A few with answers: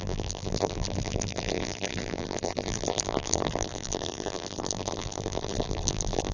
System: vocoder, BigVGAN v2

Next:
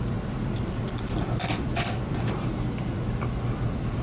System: vocoder, BigVGAN v2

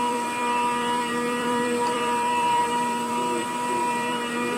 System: vocoder, BigVGAN v2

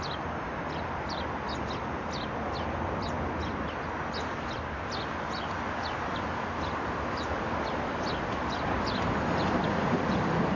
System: none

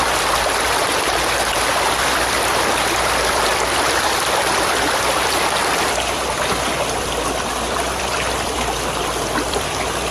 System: vocoder, BigVGAN v2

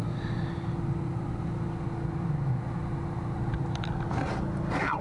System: none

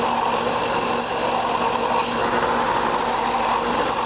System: none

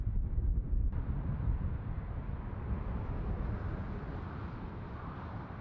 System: none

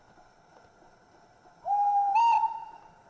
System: none